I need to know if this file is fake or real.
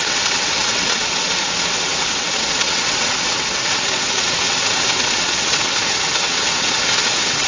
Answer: fake